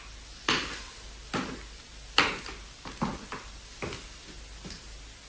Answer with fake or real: real